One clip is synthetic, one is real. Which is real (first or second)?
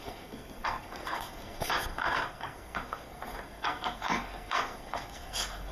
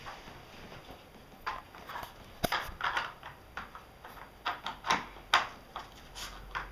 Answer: second